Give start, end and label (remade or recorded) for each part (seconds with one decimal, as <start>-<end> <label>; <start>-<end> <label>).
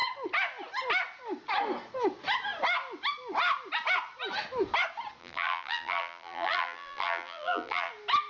0.0-5.2 recorded; 5.2-7.9 remade; 7.9-8.3 recorded